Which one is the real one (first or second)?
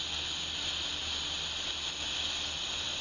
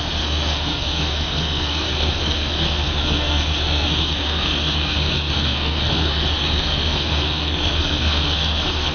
first